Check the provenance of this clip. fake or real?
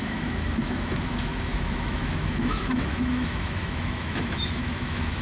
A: fake